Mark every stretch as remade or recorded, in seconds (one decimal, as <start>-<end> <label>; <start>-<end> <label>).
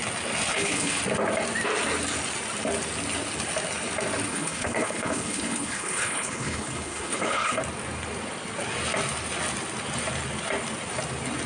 0.0-0.5 recorded; 0.5-1.0 remade; 1.0-4.3 recorded; 4.3-7.6 remade; 7.6-11.5 recorded